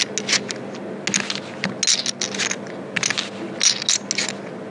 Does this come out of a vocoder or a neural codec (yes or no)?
no